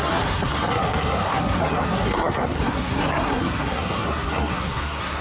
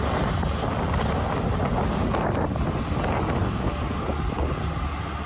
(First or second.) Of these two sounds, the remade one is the first